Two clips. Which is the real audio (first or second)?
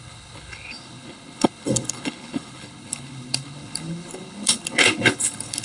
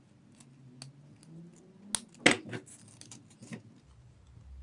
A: second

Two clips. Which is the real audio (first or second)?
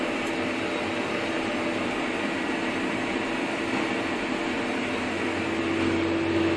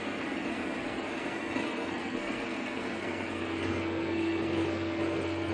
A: first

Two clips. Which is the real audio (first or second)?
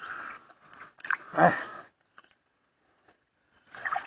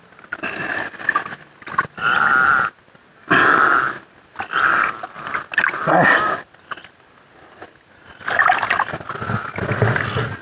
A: second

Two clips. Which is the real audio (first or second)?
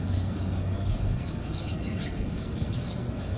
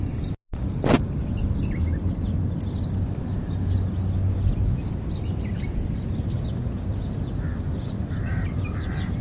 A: second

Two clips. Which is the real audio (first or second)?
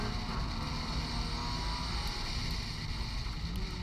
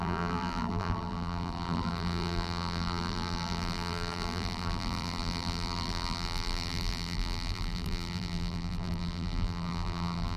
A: first